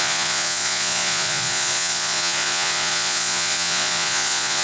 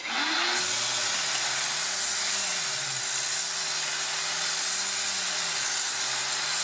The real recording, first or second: second